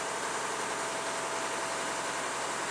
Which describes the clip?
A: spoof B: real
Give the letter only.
B